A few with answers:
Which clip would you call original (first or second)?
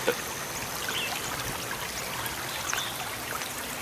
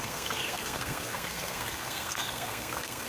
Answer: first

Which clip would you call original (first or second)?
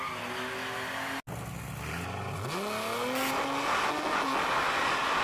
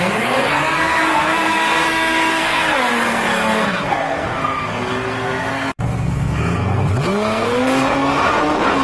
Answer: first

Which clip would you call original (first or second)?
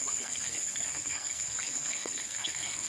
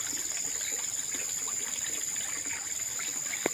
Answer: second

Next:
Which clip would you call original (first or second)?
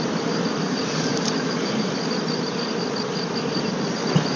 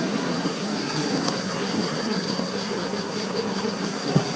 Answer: first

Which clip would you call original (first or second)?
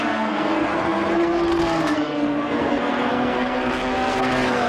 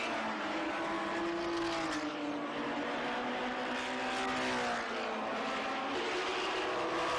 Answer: second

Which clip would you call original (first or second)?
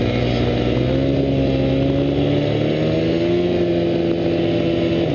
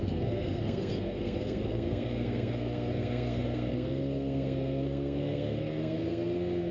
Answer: first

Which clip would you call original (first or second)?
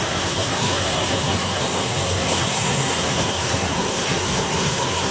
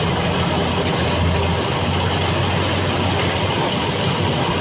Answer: second